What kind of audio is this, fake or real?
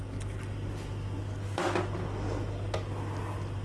real